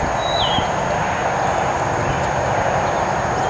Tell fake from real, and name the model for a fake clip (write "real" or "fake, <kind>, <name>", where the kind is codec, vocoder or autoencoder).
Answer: real